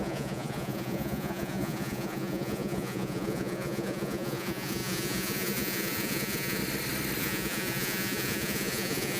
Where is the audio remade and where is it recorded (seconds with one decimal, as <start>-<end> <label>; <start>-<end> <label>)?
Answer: 0.0-6.6 remade; 6.6-7.2 recorded; 7.2-9.2 remade